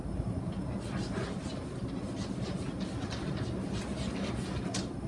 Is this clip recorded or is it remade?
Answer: recorded